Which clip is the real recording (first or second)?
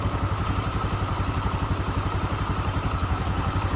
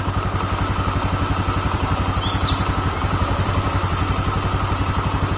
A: second